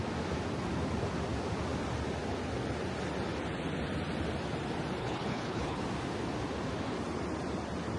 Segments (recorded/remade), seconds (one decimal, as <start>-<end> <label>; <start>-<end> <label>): 0.0-5.0 recorded; 5.0-5.8 remade; 5.8-8.0 recorded